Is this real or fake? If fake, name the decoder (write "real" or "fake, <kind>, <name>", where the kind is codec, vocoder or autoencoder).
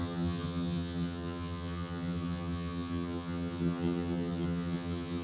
fake, vocoder, HiFi-GAN